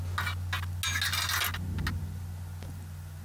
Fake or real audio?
real